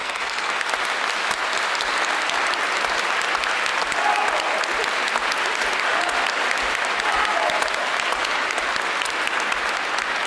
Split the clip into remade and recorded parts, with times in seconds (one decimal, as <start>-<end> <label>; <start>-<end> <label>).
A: 0.0-0.6 remade; 0.6-10.3 recorded